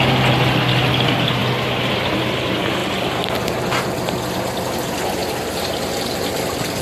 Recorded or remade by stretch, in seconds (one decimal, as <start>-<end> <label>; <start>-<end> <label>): 0.0-6.8 recorded